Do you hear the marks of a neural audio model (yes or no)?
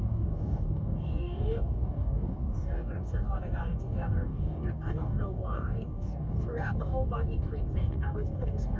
yes